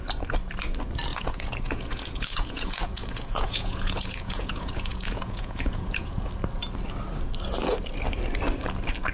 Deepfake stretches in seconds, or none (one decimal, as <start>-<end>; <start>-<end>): 1.1-6.2